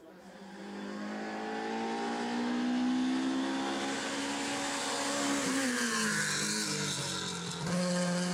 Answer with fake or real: real